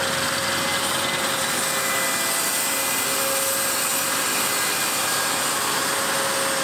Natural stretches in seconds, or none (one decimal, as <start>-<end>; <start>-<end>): 0.0-6.6